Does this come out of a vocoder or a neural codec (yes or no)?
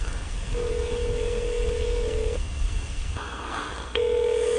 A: yes